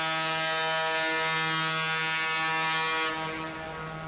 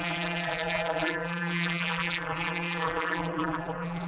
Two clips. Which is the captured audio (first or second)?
first